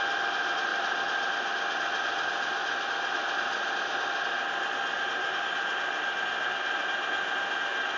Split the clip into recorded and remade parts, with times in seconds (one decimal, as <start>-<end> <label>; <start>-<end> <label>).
0.0-8.0 recorded